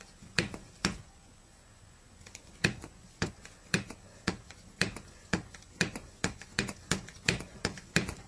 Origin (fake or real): fake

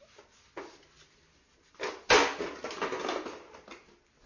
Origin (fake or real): real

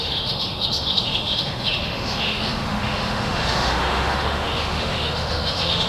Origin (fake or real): fake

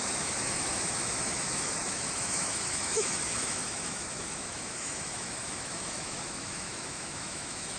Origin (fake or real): fake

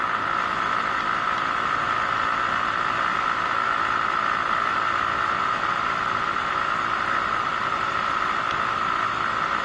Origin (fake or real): real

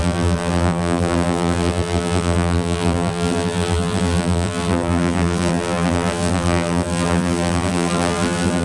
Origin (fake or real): fake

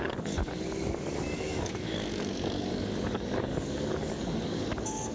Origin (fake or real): fake